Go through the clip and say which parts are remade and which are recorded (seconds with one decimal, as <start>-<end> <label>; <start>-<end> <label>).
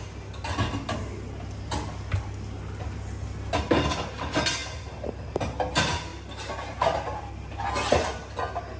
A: 0.0-8.8 recorded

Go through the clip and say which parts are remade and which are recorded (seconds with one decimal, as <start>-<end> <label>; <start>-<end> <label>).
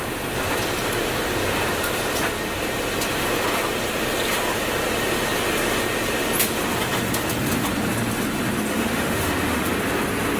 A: 0.0-8.7 recorded; 8.7-9.7 remade; 9.7-10.4 recorded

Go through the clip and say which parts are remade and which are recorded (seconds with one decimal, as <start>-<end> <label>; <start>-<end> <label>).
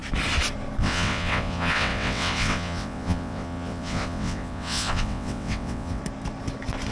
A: 0.0-0.8 recorded; 0.8-6.0 remade; 6.0-6.9 recorded